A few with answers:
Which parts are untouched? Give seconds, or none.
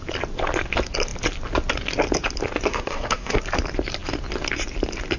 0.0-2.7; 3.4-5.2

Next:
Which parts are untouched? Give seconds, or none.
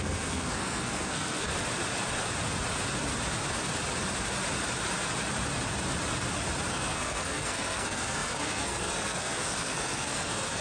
1.5-6.7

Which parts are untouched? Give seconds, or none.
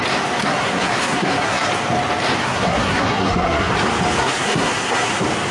0.0-0.4; 1.7-2.4; 3.7-4.2; 5.1-5.5